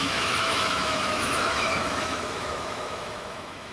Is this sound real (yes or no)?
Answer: no